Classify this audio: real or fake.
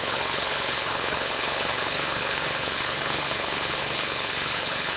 fake